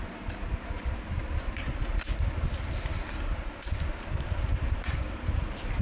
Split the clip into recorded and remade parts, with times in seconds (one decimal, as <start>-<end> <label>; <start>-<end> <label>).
0.0-3.9 recorded; 3.9-4.6 remade; 4.6-5.8 recorded